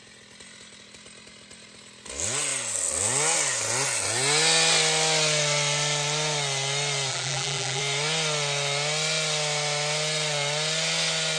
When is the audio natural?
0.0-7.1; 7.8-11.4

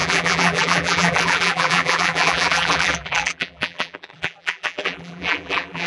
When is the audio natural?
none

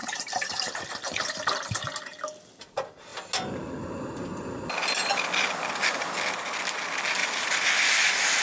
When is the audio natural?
0.0-7.2; 7.7-8.4

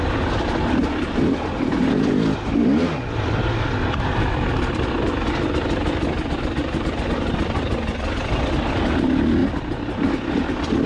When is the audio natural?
0.0-6.6; 7.3-9.4; 9.9-10.9

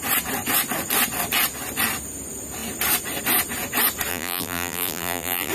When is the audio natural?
0.0-4.1

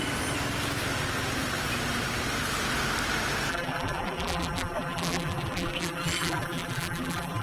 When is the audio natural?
0.0-3.5

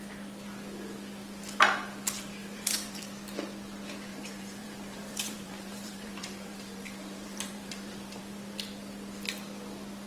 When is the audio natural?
0.0-2.4; 3.0-4.1; 8.2-10.1